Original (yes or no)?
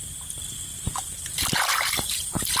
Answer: yes